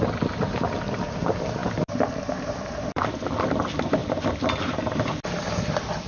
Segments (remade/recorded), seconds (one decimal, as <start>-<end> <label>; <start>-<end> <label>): 0.0-1.6 recorded; 1.6-3.0 remade; 3.0-6.1 recorded